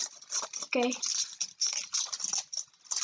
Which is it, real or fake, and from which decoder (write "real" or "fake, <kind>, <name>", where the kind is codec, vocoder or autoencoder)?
real